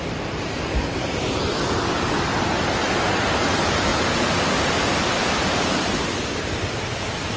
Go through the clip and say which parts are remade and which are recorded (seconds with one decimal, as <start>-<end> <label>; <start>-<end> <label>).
0.0-7.4 recorded